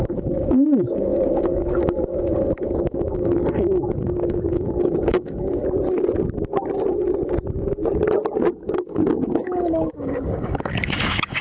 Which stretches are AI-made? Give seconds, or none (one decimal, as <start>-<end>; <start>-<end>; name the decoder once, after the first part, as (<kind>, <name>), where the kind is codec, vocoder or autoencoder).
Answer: 0.0-5.6 (codec, DAC); 8.5-11.4